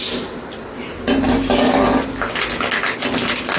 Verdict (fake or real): real